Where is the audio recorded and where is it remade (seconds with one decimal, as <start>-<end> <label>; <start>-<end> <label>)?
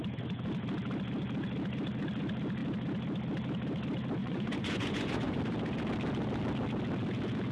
0.0-4.2 recorded; 4.2-5.4 remade; 5.4-7.5 recorded